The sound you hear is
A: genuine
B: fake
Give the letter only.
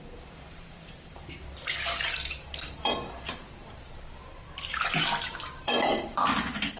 B